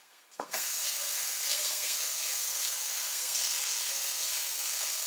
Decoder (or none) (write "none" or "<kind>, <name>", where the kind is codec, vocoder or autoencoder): codec, SNAC